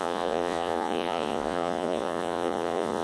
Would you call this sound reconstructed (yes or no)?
yes